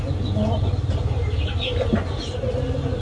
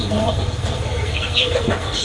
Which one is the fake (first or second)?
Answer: second